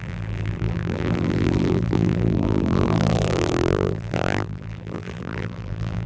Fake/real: fake